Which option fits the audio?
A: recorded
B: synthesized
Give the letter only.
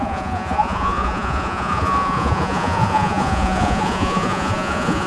B